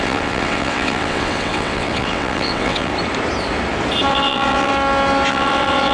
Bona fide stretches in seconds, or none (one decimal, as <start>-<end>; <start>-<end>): 2.9-4.1; 4.7-5.3